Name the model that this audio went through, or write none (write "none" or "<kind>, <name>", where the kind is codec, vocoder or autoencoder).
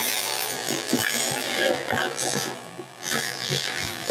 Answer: vocoder, BigVGAN v2